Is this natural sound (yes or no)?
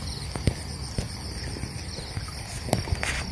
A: yes